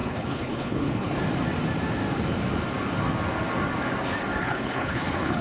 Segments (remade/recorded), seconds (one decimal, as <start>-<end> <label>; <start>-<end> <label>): 0.0-1.2 remade; 1.2-4.4 recorded; 4.4-5.4 remade